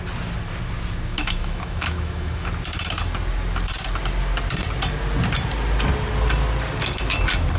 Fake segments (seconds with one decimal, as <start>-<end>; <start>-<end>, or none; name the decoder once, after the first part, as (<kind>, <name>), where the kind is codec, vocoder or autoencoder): 1.1-2.5 (autoencoder, DAC-VAE)